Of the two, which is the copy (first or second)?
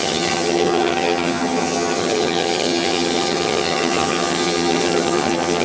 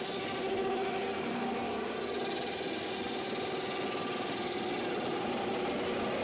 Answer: first